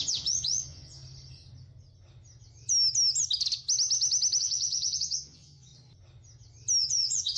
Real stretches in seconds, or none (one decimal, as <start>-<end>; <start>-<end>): 1.0-4.4; 5.7-6.8